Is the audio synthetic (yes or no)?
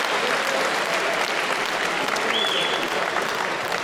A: no